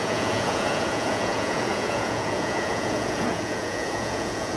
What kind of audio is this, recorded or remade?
remade